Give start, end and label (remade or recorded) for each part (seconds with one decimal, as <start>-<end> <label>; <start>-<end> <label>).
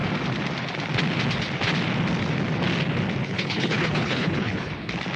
0.0-3.2 recorded; 3.2-4.7 remade; 4.7-5.2 recorded